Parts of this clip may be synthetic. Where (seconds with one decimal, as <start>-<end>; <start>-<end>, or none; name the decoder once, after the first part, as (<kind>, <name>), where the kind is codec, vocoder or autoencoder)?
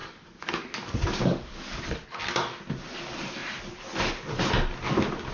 0.0-1.8 (codec, DAC)